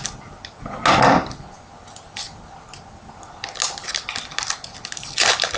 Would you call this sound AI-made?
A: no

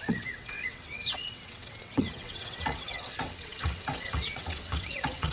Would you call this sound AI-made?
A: yes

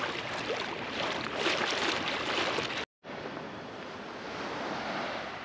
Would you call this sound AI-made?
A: no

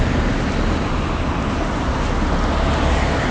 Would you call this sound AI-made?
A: no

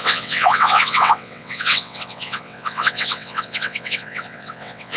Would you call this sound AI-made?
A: yes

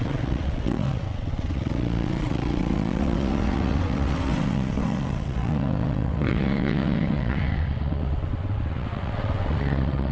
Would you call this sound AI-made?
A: yes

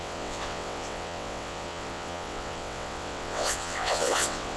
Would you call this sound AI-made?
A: yes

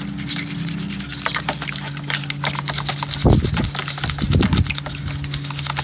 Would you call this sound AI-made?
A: no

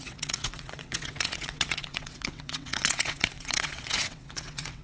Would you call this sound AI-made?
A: yes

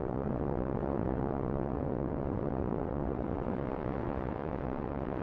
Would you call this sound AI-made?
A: yes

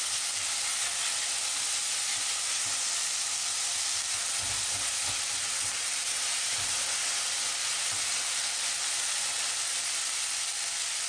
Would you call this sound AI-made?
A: no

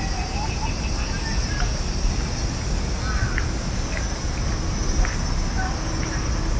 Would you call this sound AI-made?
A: no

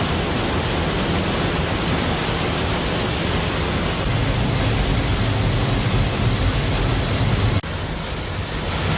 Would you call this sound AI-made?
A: no